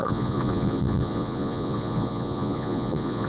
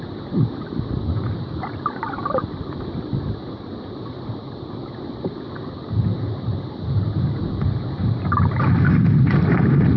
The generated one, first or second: first